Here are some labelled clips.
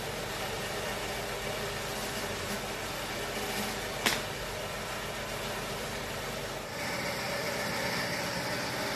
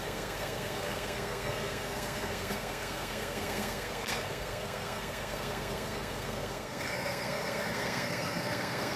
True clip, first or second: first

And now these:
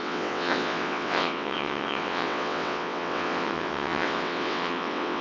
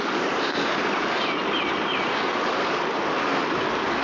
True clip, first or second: second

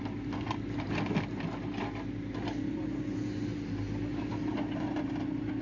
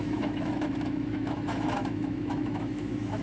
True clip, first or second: first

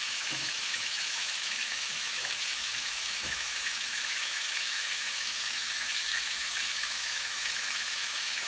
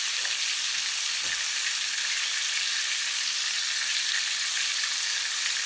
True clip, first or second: second